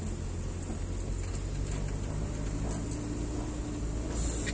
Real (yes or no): yes